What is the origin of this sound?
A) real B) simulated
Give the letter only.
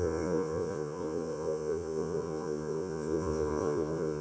B